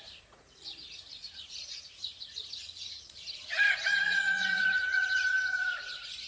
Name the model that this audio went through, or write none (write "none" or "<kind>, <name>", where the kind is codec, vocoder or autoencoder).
vocoder, Vocos